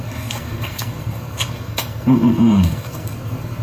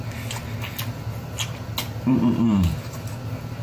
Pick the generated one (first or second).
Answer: first